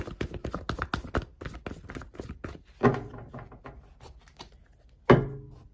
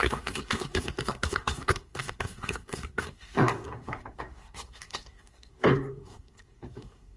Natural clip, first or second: first